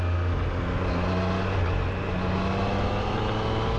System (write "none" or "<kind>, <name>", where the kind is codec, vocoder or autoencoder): none